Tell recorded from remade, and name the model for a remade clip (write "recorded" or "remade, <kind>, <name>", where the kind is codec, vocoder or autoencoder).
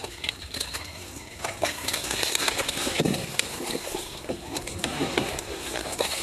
remade, codec, SNAC